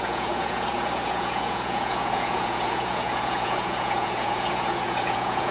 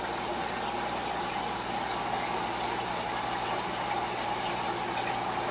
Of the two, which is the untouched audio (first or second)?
second